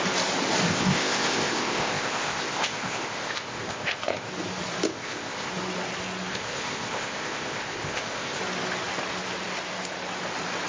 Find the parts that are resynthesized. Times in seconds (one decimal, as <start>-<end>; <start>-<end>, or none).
0.7-4.3; 4.9-5.5; 6.3-8.4